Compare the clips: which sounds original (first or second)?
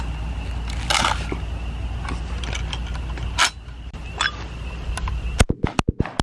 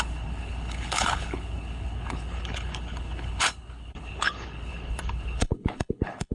first